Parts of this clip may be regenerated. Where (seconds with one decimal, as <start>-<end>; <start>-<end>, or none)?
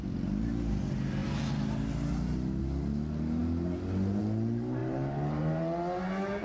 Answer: none